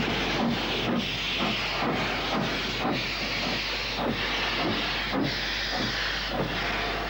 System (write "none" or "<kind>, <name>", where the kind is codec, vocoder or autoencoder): none